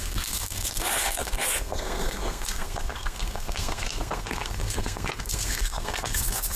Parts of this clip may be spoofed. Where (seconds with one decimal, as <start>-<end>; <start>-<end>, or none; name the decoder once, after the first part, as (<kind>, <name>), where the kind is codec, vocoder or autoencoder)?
0.0-6.6 (codec, SNAC)